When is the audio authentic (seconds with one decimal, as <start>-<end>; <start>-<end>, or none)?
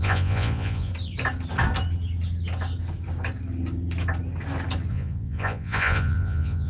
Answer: 0.9-4.9